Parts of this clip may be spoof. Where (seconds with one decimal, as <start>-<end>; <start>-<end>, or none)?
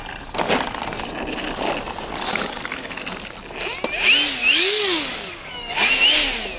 2.3-3.0; 4.4-5.9